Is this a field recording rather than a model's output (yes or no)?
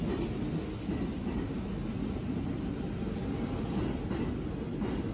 yes